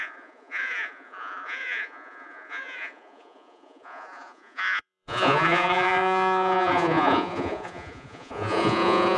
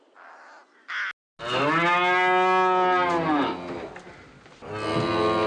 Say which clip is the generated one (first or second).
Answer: first